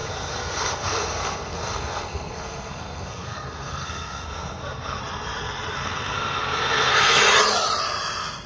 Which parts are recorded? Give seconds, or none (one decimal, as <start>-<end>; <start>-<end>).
5.0-5.7; 7.2-8.5